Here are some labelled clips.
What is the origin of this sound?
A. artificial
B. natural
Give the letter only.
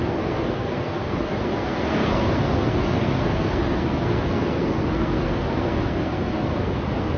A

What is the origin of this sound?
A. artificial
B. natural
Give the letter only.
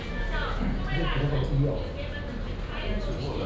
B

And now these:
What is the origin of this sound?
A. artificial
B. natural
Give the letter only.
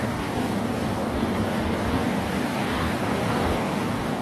A